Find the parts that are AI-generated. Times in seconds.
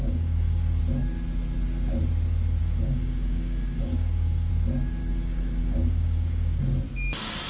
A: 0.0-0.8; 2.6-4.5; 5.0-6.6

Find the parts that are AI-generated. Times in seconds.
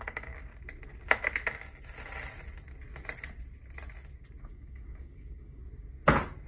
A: 0.0-0.5; 4.4-5.6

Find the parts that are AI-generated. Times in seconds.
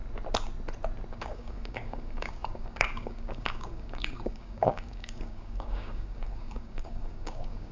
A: 1.1-7.7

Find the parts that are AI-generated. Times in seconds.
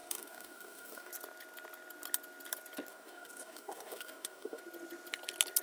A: 0.0-1.1; 2.9-4.6